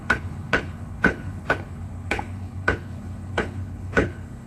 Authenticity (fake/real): fake